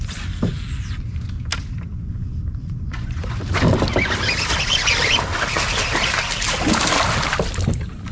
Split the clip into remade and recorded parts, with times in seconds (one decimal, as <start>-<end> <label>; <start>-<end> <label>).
0.0-1.9 recorded; 1.9-3.4 remade; 3.4-8.1 recorded